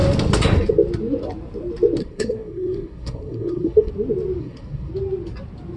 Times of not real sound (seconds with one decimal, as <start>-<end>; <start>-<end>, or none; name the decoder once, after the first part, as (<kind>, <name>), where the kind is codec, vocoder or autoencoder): 2.0-3.9 (codec, SNAC); 4.4-4.9